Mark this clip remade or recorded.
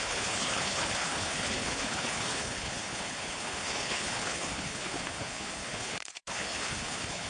remade